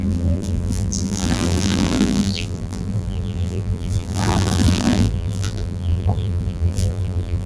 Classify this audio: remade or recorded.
remade